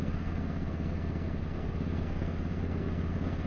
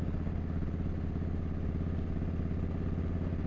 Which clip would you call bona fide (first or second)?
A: second